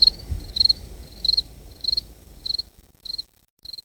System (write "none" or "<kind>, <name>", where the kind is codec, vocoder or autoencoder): codec, DAC